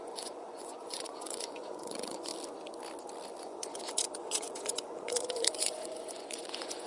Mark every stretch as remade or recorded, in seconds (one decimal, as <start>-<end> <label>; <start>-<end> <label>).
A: 0.0-2.3 remade; 2.3-3.4 recorded; 3.4-6.9 remade